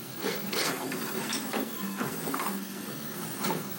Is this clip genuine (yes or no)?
no